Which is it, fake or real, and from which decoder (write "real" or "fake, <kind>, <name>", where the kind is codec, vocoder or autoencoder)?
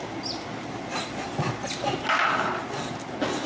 real